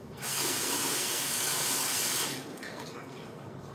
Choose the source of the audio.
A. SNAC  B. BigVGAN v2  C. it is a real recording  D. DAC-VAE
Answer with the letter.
A